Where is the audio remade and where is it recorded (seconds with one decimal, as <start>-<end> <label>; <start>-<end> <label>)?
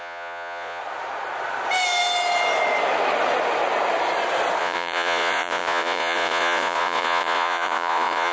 0.0-0.8 remade; 0.8-4.6 recorded; 4.6-8.3 remade